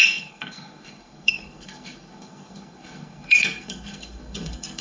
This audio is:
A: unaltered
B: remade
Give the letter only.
B